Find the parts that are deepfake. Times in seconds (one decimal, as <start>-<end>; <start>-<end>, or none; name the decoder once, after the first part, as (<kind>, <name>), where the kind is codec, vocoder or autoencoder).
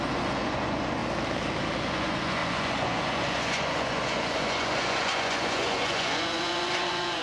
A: 0.0-1.0 (vocoder, Vocos); 1.8-7.2